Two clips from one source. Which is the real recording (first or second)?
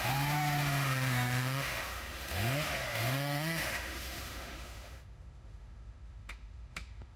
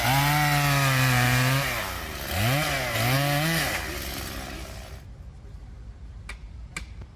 second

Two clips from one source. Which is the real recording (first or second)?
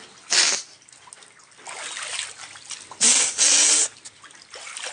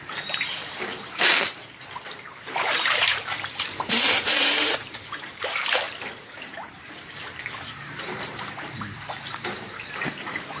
first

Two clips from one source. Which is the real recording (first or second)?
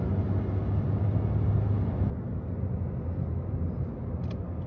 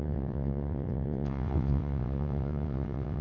first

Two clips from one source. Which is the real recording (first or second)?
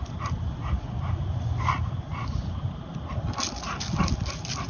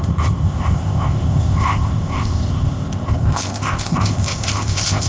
first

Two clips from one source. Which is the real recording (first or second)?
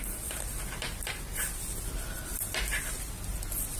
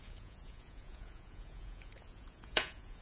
first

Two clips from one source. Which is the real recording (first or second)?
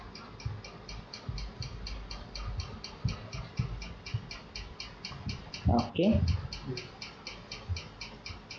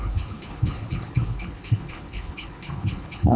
first